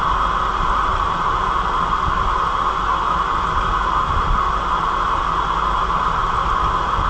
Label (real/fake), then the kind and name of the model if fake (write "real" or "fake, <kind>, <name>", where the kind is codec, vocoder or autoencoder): real